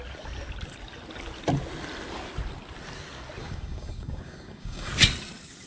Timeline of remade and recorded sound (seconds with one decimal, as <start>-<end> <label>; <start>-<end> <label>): 0.0-3.4 recorded; 3.4-4.9 remade; 4.9-5.7 recorded